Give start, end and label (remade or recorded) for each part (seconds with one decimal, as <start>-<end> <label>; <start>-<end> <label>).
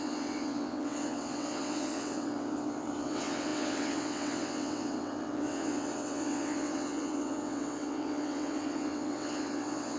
0.0-10.0 remade